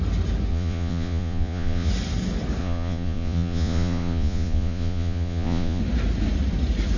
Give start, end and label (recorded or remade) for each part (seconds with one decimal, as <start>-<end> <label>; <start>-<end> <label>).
0.0-0.5 recorded; 0.5-1.9 remade; 1.9-2.6 recorded; 2.6-5.8 remade; 5.8-7.0 recorded